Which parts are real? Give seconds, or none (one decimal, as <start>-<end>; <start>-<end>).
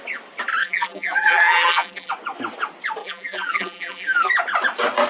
0.0-0.6; 2.1-3.0; 4.3-5.1